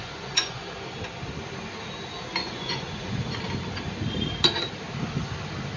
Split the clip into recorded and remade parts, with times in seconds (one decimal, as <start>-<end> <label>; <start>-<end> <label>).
0.0-0.6 remade; 0.6-2.4 recorded; 2.4-3.2 remade; 3.2-5.8 recorded